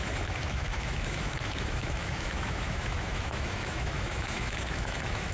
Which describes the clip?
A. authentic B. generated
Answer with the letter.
B